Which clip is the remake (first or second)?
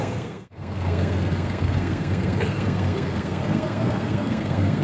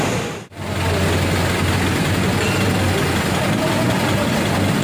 first